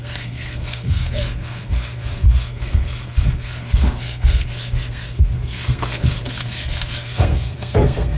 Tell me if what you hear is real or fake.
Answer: fake